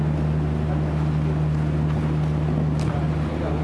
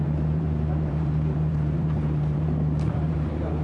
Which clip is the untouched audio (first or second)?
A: first